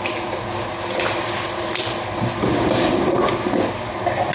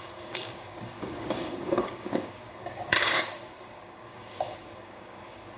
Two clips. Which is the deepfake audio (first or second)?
second